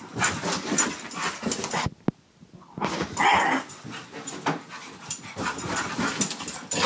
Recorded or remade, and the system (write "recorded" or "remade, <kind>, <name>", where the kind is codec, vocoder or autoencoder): recorded